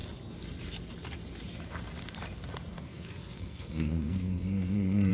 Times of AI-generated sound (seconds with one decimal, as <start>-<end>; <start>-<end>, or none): 2.7-5.1